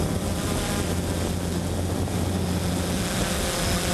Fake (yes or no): no